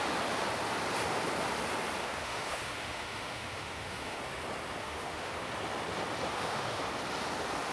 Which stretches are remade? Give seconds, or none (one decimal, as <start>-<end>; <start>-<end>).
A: 2.0-4.2; 4.8-5.4; 6.3-6.8